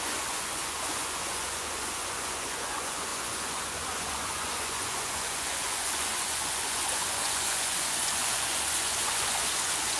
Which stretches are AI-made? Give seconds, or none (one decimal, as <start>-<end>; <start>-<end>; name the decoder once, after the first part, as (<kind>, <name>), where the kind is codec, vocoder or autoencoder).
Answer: 0.0-10.0 (vocoder, Vocos)